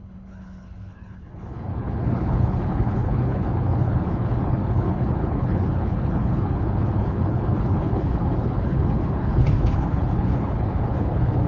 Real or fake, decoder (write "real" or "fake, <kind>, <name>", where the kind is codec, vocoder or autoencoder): fake, codec, HILCodec